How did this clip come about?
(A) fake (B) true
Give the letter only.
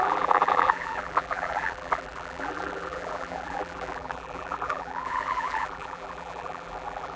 A